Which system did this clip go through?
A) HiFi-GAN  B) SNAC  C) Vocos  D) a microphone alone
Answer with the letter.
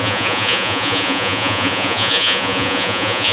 C